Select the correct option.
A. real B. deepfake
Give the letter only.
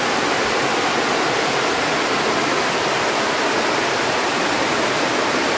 A